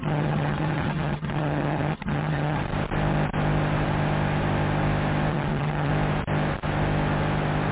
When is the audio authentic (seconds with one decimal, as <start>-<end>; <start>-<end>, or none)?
2.6-5.3; 5.9-7.7